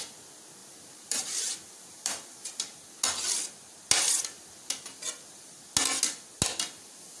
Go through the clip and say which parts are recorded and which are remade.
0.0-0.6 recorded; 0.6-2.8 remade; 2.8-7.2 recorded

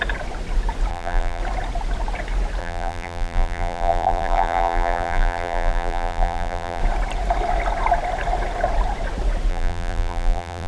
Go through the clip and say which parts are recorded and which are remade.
0.0-0.9 recorded; 0.9-1.4 remade; 1.4-2.6 recorded; 2.6-6.8 remade; 6.8-9.5 recorded; 9.5-10.7 remade

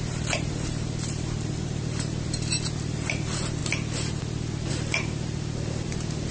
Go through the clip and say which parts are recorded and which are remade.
0.0-3.6 remade; 3.6-4.7 recorded; 4.7-6.3 remade